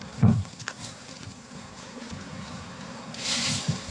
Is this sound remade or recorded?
remade